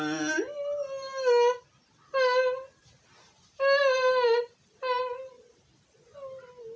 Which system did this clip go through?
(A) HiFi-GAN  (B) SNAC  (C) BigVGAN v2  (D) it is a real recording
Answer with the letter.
D